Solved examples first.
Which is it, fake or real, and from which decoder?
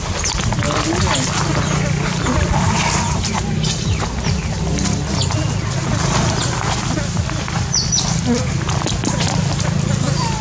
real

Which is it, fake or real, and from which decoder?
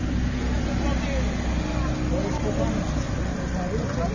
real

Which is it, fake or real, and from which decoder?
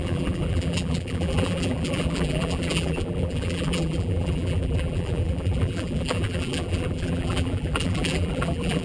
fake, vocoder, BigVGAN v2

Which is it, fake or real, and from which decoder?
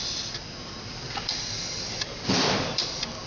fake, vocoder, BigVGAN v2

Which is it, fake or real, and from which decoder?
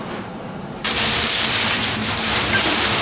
fake, vocoder, BigVGAN v2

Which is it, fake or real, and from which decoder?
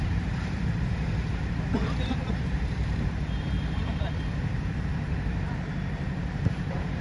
fake, vocoder, BigVGAN v2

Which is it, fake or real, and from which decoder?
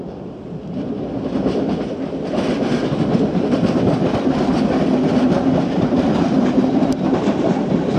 fake, vocoder, BigVGAN v2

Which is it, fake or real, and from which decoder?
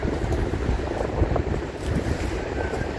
fake, vocoder, BigVGAN v2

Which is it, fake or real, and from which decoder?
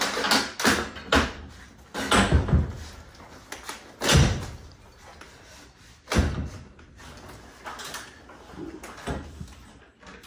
real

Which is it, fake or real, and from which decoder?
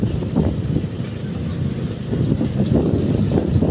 real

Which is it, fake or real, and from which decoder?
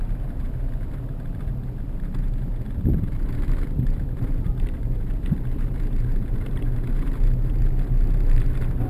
fake, vocoder, BigVGAN v2